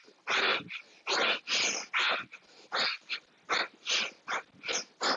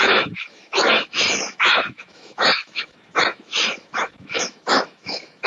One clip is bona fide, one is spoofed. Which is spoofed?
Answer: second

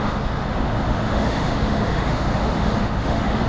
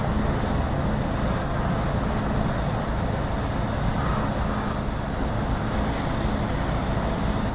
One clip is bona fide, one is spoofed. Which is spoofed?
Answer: first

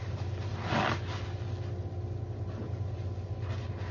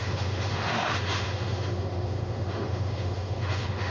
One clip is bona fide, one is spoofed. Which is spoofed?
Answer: second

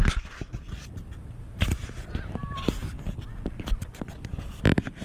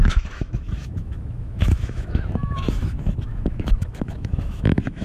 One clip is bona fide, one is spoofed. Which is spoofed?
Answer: second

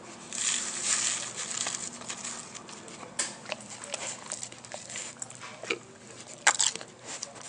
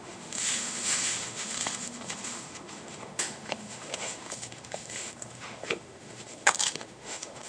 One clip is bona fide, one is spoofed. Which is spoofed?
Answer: second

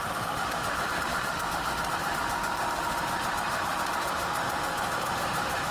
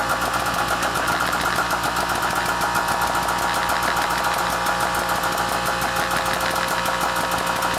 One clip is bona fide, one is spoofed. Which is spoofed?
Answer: first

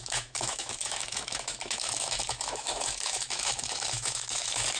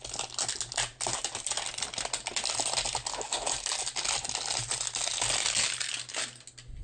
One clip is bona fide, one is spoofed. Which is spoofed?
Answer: first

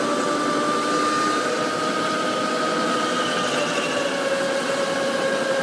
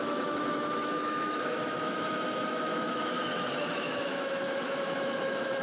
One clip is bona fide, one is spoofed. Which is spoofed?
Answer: second